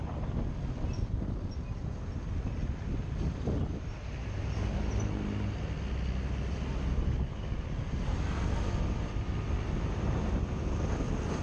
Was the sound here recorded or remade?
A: recorded